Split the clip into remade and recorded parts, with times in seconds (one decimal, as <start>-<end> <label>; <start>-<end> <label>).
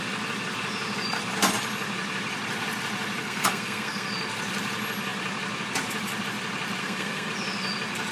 0.0-3.2 recorded; 3.2-4.1 remade; 4.1-6.8 recorded; 6.8-7.3 remade; 7.3-8.1 recorded